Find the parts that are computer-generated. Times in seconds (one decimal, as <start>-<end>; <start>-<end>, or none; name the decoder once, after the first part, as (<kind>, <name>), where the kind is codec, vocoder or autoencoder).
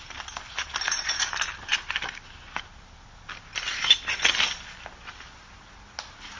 none